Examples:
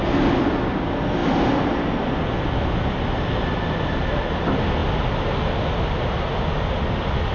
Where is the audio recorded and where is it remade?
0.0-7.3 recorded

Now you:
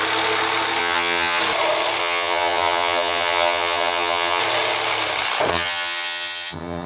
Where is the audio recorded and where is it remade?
0.0-0.8 recorded; 0.8-1.4 remade; 1.4-2.0 recorded; 2.0-4.4 remade; 4.4-5.5 recorded; 5.5-6.9 remade

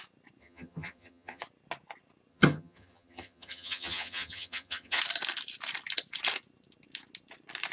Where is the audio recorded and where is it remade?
0.0-0.4 recorded; 0.4-1.4 remade; 1.4-2.3 recorded; 2.3-5.0 remade; 5.0-7.7 recorded

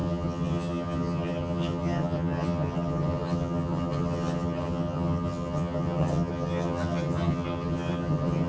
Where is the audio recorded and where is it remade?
0.0-8.5 remade

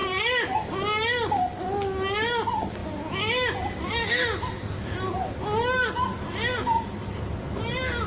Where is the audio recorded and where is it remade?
0.0-8.1 recorded